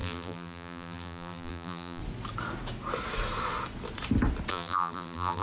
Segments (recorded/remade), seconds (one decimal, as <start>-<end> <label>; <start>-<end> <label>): 0.0-2.0 remade; 2.0-4.5 recorded; 4.5-5.4 remade

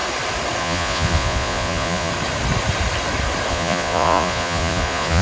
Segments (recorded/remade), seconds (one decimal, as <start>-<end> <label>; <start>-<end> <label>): 0.0-0.6 recorded; 0.6-2.1 remade; 2.1-3.5 recorded; 3.5-5.2 remade

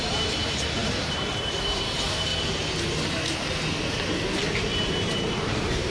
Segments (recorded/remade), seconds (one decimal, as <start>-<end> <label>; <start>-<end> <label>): 0.0-2.3 remade; 2.3-5.0 recorded; 5.0-5.9 remade

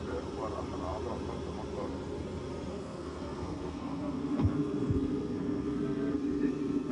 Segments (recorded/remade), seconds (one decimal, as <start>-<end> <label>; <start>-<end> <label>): 0.0-2.7 recorded; 2.7-6.9 remade

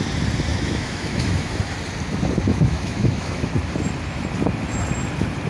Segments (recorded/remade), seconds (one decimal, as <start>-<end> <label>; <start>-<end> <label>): 0.0-0.5 recorded; 0.5-1.5 remade; 1.5-2.5 recorded; 2.5-3.5 remade; 3.5-5.5 recorded